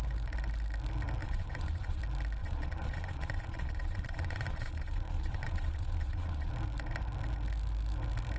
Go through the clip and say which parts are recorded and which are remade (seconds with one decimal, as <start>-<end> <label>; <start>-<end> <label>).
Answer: 0.0-1.2 recorded; 1.2-2.0 remade; 2.0-2.4 recorded; 2.4-6.5 remade; 6.5-8.4 recorded